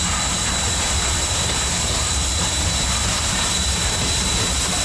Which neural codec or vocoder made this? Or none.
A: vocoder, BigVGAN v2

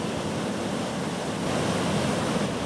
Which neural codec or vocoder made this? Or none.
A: none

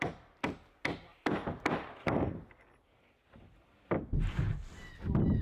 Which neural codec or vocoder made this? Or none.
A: none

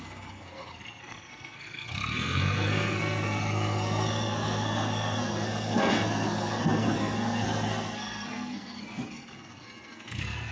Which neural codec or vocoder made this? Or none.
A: codec, SNAC